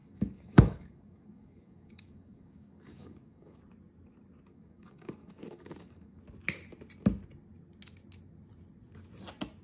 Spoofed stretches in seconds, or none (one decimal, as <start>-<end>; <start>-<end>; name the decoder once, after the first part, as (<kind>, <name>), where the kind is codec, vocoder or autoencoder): 0.0-3.6 (codec, DAC); 4.5-6.2